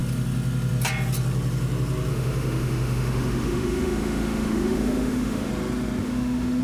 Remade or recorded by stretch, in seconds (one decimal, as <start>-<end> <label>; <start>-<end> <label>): 0.0-2.1 recorded; 2.1-5.5 remade; 5.5-6.0 recorded; 6.0-6.6 remade